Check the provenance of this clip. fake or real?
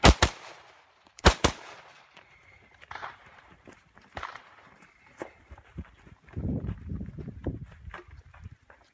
fake